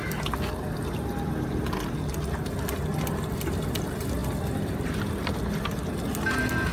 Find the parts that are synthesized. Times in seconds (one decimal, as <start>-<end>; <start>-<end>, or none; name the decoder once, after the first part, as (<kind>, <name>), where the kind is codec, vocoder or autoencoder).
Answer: none